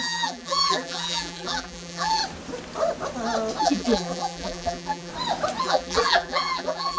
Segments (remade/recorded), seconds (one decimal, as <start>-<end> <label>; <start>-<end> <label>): 0.0-2.2 remade; 2.2-3.6 recorded; 3.6-5.1 remade; 5.1-5.6 recorded; 5.6-7.0 remade